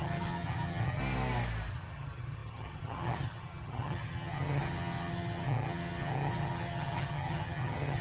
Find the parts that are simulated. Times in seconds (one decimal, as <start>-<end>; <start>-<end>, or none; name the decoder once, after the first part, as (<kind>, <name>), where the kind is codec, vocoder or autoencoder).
0.0-1.0 (vocoder, HiFi-GAN); 1.7-8.0